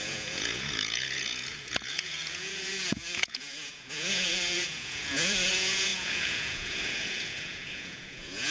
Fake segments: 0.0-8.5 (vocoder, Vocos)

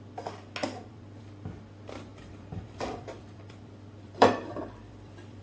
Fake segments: 0.6-1.2 (vocoder, BigVGAN v2); 2.1-5.4

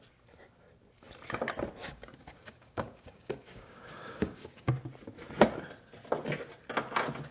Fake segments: 1.8-4.7 (codec, DAC)